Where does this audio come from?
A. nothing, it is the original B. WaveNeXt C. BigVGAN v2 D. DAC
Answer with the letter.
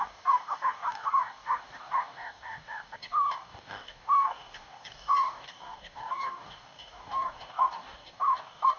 D